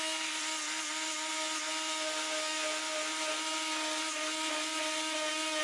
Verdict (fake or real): real